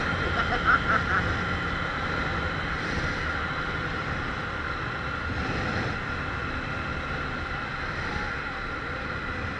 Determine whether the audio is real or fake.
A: real